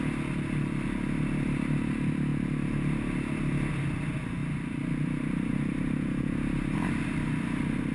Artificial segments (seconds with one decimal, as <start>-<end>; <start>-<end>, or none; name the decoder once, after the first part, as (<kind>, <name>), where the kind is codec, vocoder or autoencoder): none